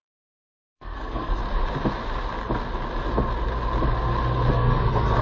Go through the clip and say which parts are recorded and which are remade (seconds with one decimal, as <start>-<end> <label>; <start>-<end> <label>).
0.0-1.4 remade; 1.4-4.5 recorded; 4.5-5.2 remade